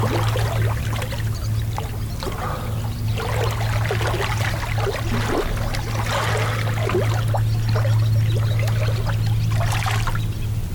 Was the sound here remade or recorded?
recorded